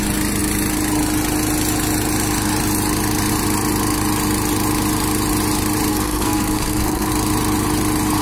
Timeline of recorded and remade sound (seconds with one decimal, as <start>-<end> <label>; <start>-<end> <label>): 0.0-5.9 recorded; 5.9-7.1 remade; 7.1-8.2 recorded